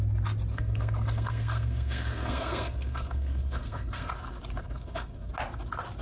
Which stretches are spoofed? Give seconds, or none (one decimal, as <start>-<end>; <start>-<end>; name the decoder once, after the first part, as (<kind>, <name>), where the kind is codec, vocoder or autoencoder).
0.5-4.1 (codec, SNAC); 4.6-5.3